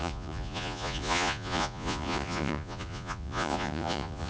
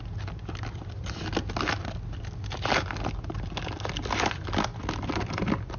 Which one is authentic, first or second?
second